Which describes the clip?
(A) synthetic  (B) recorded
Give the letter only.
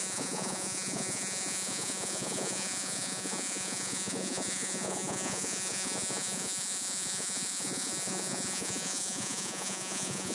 A